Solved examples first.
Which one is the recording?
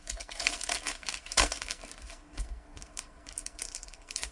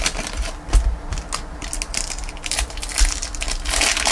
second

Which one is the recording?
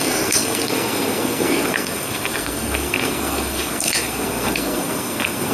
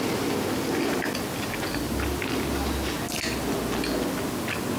second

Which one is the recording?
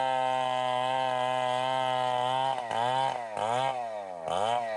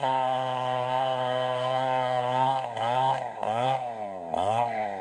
first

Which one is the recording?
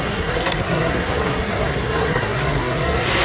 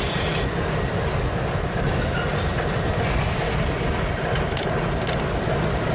second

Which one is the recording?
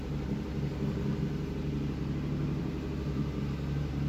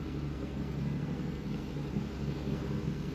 first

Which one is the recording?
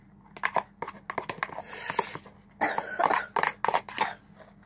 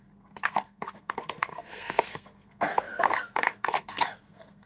first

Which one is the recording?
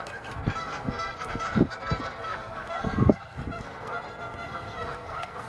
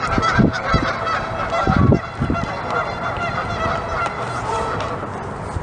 second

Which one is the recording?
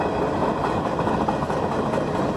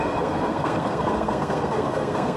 first